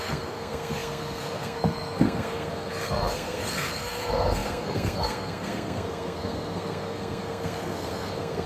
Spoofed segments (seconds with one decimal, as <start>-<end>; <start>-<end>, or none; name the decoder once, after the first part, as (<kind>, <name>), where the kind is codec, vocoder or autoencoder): 0.0-8.5 (codec, SNAC)